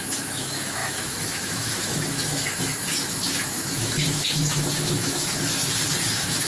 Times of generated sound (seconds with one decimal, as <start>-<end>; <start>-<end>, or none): 0.0-5.6; 6.1-6.5